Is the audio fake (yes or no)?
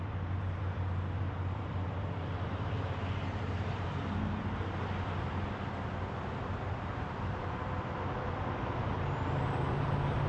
yes